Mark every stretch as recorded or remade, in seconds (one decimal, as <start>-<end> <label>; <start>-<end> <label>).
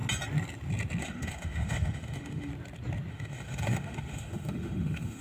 0.0-1.0 recorded; 1.0-2.5 remade; 2.5-3.1 recorded; 3.1-5.2 remade